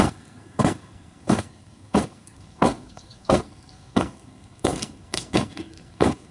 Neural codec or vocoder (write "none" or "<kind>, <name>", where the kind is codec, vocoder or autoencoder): codec, SNAC